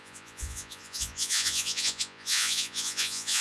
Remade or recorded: remade